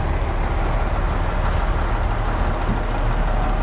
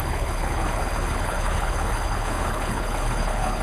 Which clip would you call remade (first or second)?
second